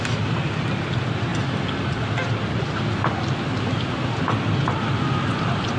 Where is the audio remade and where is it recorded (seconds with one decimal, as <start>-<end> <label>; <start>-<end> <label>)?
0.0-5.8 recorded